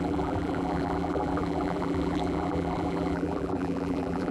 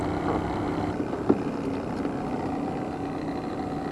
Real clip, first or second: second